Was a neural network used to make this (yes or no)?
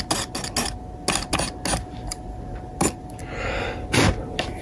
no